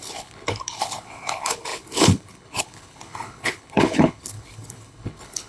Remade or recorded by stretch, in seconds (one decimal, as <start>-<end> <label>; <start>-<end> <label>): 0.0-5.5 remade